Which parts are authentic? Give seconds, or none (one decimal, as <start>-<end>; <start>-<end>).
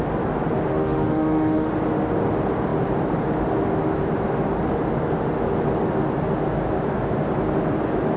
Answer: 0.0-0.7; 1.7-8.2